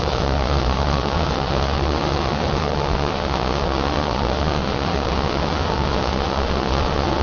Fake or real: fake